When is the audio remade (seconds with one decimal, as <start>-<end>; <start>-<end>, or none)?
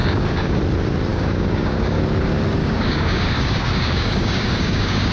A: 0.0-0.6; 1.1-2.0; 2.6-5.1